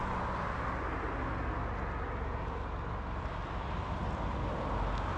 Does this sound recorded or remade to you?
recorded